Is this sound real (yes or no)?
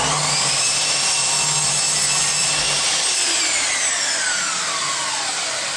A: yes